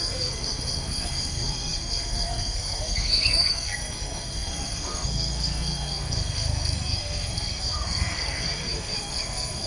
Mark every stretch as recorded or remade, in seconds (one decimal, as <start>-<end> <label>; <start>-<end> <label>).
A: 0.0-9.7 remade